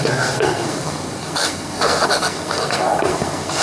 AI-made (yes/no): yes